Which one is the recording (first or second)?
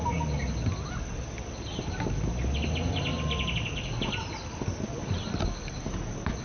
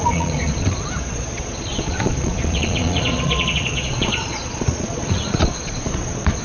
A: first